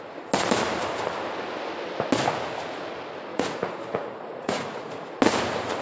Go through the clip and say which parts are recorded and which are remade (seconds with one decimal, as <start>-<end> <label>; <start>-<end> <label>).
0.0-3.3 recorded; 3.3-4.9 remade; 4.9-5.8 recorded